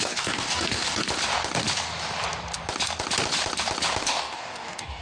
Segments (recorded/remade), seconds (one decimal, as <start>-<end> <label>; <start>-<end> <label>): 0.0-1.0 remade; 1.0-4.0 recorded; 4.0-5.0 remade